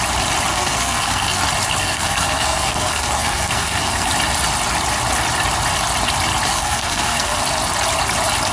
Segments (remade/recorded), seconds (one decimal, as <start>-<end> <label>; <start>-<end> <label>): 0.0-0.5 recorded; 0.5-1.4 remade; 1.4-1.8 recorded; 1.8-4.1 remade; 4.1-6.5 recorded; 6.5-7.4 remade; 7.4-8.5 recorded